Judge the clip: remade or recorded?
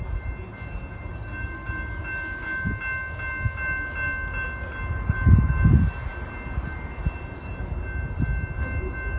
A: recorded